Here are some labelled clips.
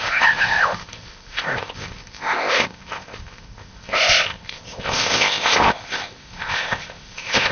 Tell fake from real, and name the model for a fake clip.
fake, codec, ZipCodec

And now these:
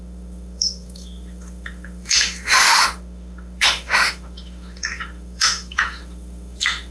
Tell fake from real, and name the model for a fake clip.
fake, autoencoder, DAC-VAE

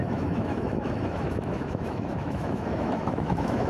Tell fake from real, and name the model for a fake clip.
fake, autoencoder, DAC-VAE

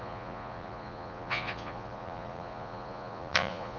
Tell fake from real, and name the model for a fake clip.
fake, vocoder, Vocos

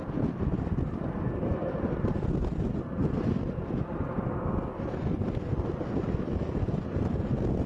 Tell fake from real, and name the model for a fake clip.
real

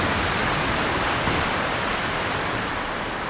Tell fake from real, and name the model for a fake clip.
real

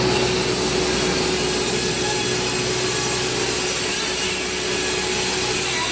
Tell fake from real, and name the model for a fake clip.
real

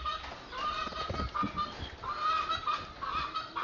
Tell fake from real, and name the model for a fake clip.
real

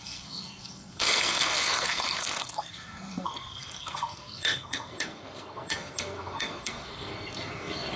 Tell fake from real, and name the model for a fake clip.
fake, codec, SNAC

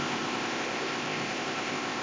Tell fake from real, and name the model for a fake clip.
fake, codec, ZipCodec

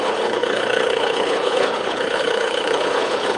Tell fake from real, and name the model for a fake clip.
fake, codec, HILCodec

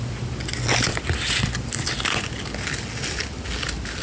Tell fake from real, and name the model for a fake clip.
real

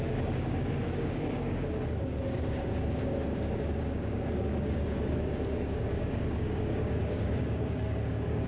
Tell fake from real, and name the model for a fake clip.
fake, codec, DAC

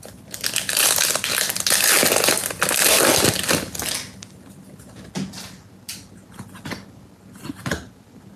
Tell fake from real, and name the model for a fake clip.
real